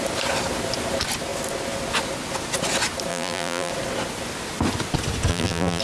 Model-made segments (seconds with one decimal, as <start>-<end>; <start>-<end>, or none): 3.1-3.7; 5.3-5.8

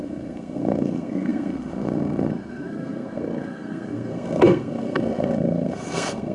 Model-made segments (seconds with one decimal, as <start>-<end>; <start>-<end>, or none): 0.0-6.3

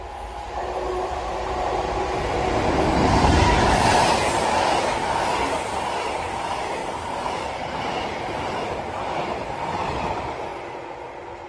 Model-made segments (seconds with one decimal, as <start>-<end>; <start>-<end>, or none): 6.8-8.8

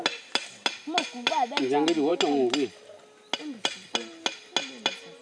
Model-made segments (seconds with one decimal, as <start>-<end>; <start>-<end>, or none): none

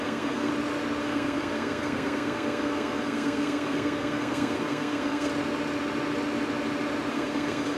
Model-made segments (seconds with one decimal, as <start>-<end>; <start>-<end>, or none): 0.0-0.5; 1.0-5.3; 7.1-7.8

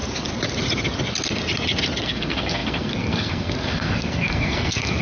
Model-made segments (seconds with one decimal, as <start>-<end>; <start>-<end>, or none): 2.0-5.0

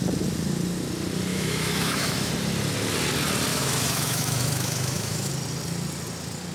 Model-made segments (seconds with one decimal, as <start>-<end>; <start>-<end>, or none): 1.3-2.3; 3.5-5.3